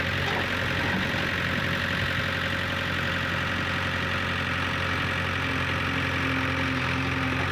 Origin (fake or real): real